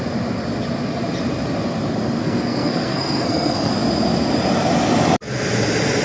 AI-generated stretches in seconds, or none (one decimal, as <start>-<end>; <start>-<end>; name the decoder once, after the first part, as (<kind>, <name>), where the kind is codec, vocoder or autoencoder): 2.2-3.7 (codec, SNAC)